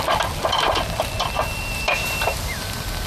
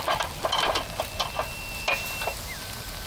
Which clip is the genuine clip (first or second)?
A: second